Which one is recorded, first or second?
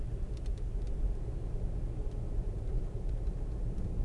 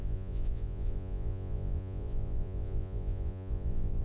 first